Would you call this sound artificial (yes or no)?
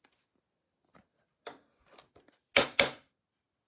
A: no